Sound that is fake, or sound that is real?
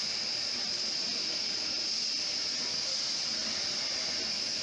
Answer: real